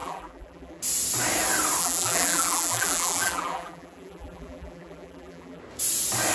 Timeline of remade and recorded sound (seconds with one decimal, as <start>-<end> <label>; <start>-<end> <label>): 0.0-0.8 remade; 0.8-1.8 recorded; 1.8-5.6 remade; 5.6-6.3 recorded